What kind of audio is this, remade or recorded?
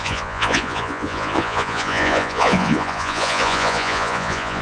remade